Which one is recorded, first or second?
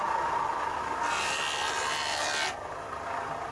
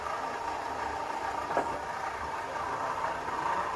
first